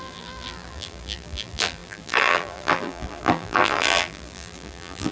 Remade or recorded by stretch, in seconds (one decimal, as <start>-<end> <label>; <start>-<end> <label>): 0.0-5.1 remade